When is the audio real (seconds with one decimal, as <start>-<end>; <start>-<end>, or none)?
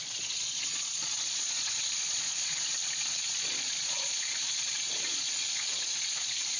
none